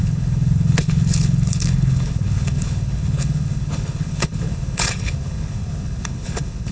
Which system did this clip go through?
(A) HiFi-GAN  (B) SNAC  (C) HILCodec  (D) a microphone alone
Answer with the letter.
C